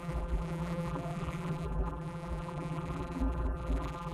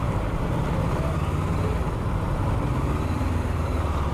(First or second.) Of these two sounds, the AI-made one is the first